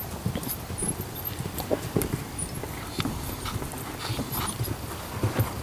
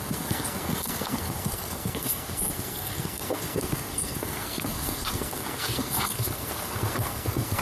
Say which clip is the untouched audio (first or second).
first